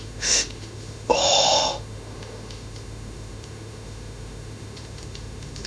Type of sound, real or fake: fake